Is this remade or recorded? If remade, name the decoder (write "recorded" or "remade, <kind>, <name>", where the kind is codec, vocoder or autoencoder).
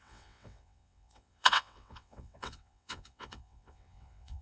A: remade, vocoder, WaveNeXt